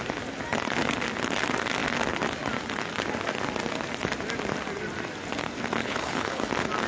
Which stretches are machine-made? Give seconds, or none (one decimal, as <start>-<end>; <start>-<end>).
5.8-6.4